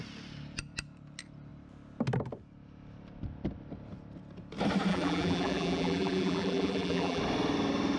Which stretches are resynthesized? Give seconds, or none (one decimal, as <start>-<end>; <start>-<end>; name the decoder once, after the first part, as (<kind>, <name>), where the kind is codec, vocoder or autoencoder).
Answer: 4.9-7.2 (vocoder, BigVGAN v2)